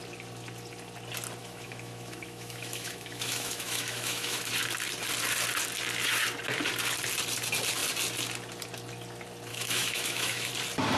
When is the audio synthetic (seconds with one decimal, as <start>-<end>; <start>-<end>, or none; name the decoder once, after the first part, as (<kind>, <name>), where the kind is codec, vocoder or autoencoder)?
1.4-4.5 (autoencoder, DAC-VAE); 9.5-10.5